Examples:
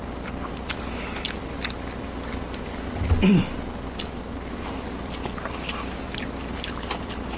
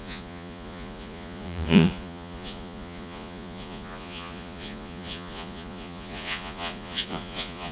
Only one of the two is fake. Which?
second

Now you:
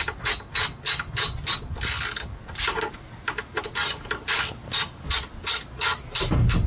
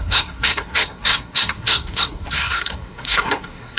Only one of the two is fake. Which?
second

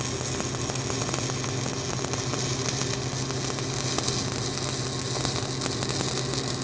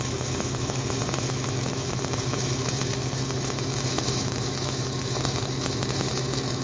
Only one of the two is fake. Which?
second